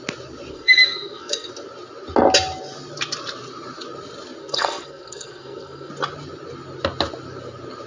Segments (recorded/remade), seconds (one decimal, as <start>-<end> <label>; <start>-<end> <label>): 0.0-0.5 recorded; 0.5-1.5 remade; 1.5-4.4 recorded; 4.4-5.9 remade; 5.9-7.9 recorded